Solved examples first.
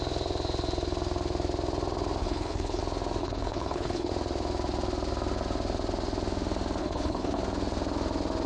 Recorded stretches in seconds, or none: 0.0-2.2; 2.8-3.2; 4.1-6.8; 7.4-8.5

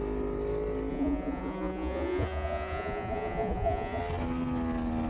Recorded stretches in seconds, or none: 0.0-0.9; 4.0-5.1